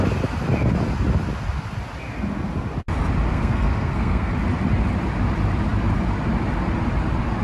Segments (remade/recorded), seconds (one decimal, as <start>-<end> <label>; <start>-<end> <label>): 0.0-3.3 recorded; 3.3-4.3 remade; 4.3-7.4 recorded